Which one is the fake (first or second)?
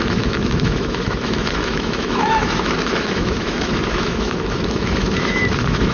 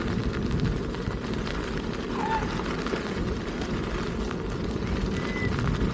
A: first